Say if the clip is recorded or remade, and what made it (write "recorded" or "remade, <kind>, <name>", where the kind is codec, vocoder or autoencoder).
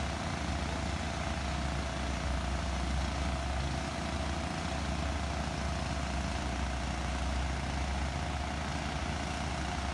recorded